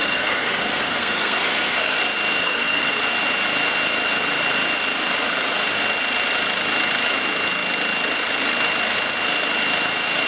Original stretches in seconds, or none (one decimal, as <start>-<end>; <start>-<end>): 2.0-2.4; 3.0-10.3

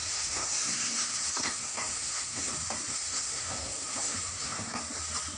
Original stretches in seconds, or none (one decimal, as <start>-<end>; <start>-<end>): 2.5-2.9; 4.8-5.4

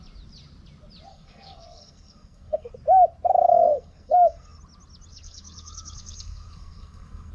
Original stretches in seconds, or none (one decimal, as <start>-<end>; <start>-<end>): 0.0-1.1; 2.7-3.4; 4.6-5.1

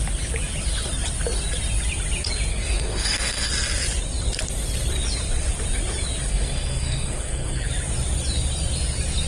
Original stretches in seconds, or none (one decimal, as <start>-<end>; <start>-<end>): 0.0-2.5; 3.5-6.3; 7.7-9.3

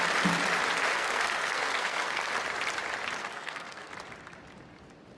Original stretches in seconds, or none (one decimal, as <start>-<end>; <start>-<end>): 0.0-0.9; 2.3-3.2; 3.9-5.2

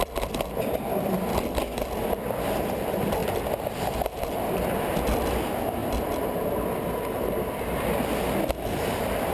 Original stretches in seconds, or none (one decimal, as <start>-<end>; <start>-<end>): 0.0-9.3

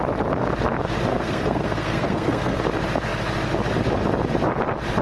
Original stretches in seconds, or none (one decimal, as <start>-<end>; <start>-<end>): 0.0-1.1; 2.6-5.0

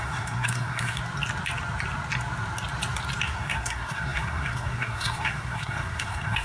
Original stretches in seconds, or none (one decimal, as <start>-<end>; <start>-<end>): 1.0-3.2